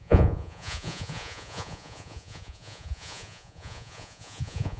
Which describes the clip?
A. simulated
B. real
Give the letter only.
A